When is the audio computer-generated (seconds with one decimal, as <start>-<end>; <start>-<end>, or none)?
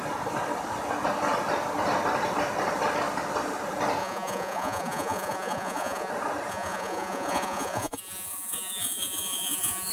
4.0-6.1; 6.5-9.9